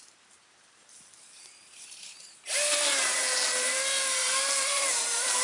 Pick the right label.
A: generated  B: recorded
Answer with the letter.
A